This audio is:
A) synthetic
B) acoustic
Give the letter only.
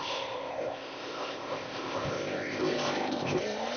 A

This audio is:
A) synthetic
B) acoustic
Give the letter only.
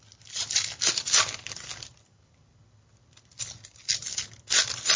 B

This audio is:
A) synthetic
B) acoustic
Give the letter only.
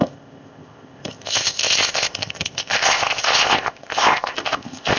A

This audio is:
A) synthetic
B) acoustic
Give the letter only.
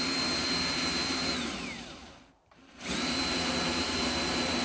B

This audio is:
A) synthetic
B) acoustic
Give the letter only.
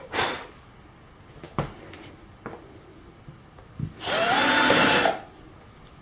B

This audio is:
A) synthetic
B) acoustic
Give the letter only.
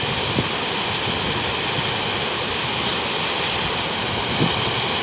B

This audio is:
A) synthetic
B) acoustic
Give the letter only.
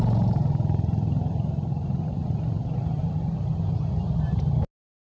B